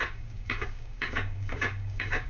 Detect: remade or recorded remade